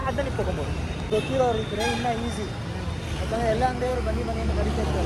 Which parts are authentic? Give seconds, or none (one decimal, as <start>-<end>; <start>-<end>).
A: 0.0-3.9; 4.5-5.1